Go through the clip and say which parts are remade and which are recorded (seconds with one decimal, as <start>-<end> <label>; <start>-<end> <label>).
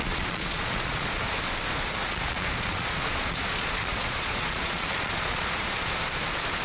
0.0-1.2 remade; 1.2-2.0 recorded; 2.0-6.0 remade; 6.0-6.6 recorded